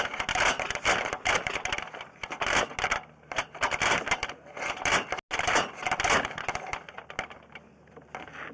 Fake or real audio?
real